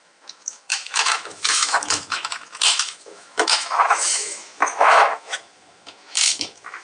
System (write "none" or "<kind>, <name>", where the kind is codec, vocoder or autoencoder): autoencoder, DAC-VAE